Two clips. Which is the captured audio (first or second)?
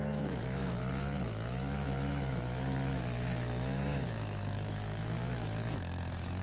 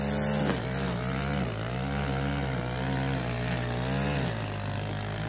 second